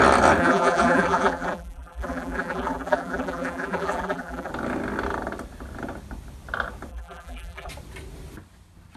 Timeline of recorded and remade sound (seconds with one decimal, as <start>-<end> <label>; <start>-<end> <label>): 0.0-0.4 recorded; 0.4-4.5 remade; 4.5-6.9 recorded; 6.9-7.7 remade; 7.7-9.0 recorded